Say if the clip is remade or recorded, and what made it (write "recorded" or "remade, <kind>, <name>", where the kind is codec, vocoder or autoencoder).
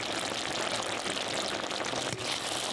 recorded